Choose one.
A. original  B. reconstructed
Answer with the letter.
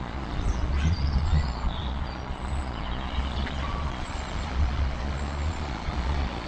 B